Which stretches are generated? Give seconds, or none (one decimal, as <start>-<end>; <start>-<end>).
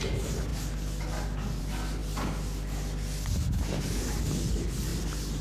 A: none